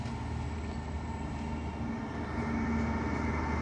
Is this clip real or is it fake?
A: real